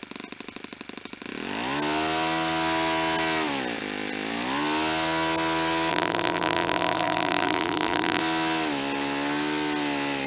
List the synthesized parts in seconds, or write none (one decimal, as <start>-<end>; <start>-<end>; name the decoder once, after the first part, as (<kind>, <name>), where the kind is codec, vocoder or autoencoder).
5.9-8.2 (vocoder, BigVGAN v2)